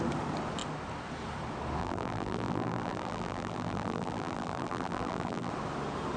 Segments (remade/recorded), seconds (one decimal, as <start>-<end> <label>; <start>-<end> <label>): 0.0-1.8 recorded; 1.8-5.5 remade; 5.5-6.2 recorded